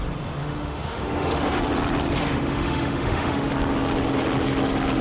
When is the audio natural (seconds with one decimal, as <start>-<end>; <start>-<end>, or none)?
0.0-0.4; 1.6-2.2; 3.5-5.0